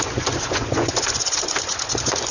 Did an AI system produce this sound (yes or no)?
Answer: yes